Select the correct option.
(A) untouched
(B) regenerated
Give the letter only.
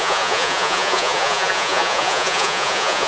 B